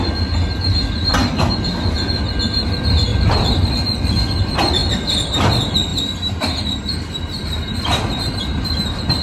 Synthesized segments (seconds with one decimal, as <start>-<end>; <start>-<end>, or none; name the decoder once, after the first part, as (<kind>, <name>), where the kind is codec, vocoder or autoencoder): 3.1-3.7 (vocoder, BigVGAN v2); 4.8-5.4; 5.9-9.2